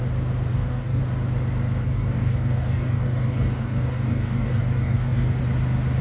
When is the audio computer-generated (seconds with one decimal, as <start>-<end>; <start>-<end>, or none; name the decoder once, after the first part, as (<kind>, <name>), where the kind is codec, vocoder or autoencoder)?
0.5-1.0 (codec, DAC); 1.8-5.4